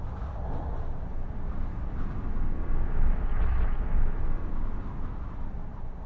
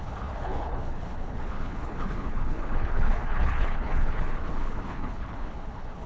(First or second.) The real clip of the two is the first